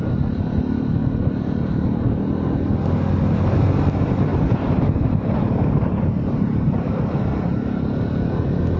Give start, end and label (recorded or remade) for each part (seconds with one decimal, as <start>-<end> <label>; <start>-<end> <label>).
0.0-4.3 recorded; 4.3-6.9 remade; 6.9-8.8 recorded